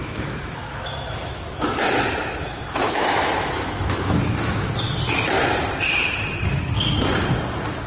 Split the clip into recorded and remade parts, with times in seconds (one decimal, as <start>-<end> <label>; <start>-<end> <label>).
0.0-4.7 remade; 4.7-7.9 recorded